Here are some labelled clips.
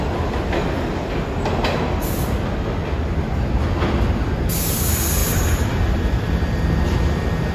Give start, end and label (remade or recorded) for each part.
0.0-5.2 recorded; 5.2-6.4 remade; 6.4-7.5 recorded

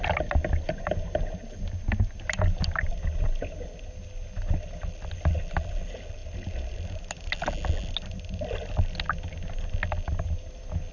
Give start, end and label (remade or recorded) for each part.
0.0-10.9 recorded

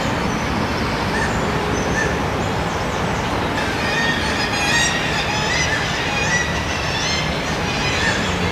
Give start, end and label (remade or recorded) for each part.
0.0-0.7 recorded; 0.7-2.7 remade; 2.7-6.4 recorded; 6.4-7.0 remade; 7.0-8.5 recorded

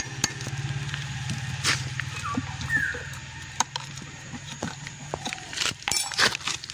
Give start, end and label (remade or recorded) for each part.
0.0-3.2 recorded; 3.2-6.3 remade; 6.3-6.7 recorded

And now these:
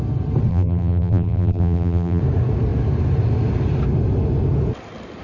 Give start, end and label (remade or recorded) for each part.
0.0-0.5 recorded; 0.5-2.2 remade; 2.2-5.2 recorded

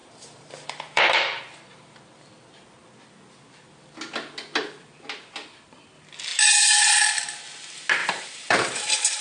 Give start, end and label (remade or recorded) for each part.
0.0-1.4 remade; 1.4-8.0 recorded; 8.0-9.2 remade

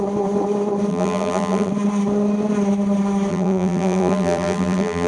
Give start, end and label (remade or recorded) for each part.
0.0-0.9 recorded; 0.9-1.7 remade; 1.7-3.3 recorded; 3.3-5.1 remade